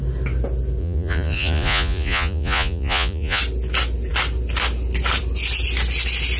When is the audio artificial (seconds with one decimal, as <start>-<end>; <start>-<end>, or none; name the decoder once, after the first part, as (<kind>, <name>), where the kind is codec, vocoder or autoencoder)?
0.8-3.4 (vocoder, Vocos)